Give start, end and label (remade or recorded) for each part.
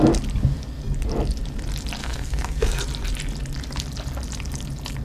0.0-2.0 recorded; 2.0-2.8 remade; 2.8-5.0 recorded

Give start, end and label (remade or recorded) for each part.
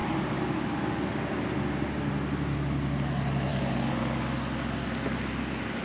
0.0-3.5 recorded; 3.5-4.0 remade; 4.0-5.8 recorded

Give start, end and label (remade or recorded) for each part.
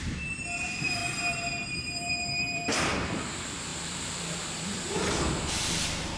0.0-6.2 remade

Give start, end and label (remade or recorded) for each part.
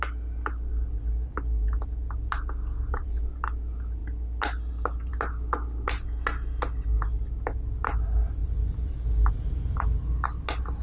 0.0-8.4 recorded; 8.4-9.3 remade; 9.3-10.8 recorded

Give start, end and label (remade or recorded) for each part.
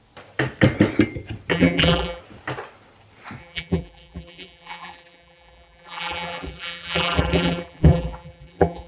0.0-1.5 recorded; 1.5-2.2 remade; 2.2-3.4 recorded; 3.4-8.9 remade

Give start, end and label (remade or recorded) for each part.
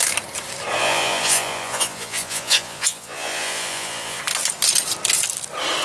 0.0-0.8 recorded; 0.8-4.2 remade; 4.2-5.8 recorded